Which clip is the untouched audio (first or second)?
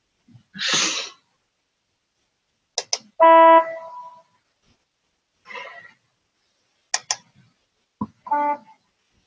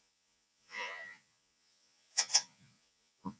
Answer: first